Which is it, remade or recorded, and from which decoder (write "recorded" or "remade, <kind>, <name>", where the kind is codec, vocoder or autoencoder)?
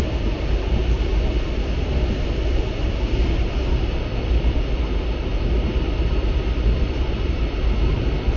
recorded